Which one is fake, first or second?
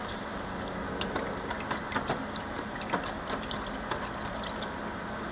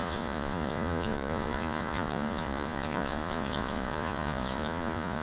second